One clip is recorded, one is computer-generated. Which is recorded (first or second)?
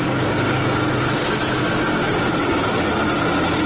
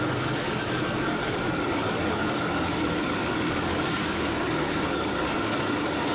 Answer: first